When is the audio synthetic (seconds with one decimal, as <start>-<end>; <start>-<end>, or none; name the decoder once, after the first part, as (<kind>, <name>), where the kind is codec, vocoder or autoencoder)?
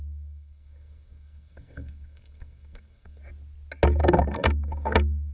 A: 0.0-3.2 (codec, SNAC); 4.0-5.3